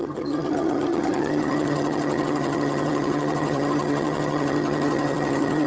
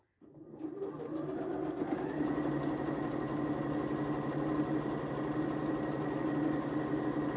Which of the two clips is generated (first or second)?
first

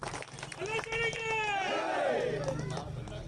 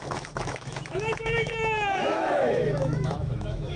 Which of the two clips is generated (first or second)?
second